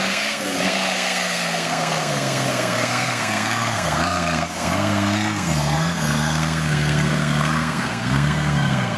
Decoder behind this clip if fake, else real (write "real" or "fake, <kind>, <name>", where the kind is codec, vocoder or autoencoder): fake, codec, SNAC